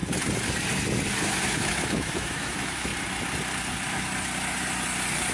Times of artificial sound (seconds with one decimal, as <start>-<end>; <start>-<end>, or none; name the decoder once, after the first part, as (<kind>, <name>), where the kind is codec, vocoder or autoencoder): 1.2-2.9 (autoencoder, DAC-VAE)